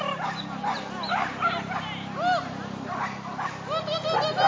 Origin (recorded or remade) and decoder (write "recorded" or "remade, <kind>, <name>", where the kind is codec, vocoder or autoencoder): recorded